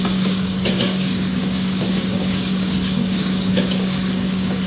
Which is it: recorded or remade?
remade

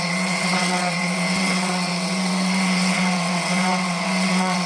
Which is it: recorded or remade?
remade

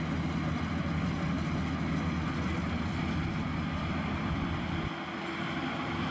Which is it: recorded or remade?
recorded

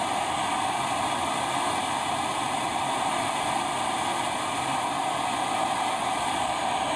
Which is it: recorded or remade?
recorded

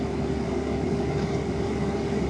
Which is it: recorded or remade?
remade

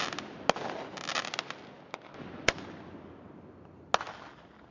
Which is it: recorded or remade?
recorded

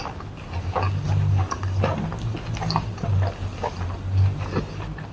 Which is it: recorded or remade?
recorded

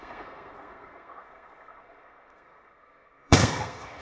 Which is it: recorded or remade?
remade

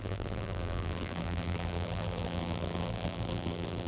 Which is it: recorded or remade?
remade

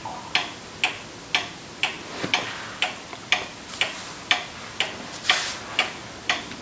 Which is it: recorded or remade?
recorded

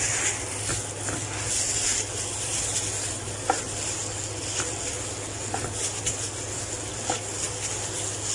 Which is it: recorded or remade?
recorded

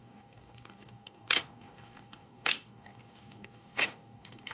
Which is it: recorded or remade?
remade